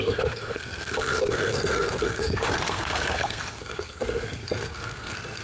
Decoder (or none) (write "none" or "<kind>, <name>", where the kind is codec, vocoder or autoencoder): codec, SNAC